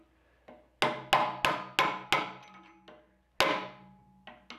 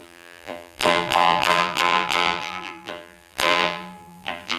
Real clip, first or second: first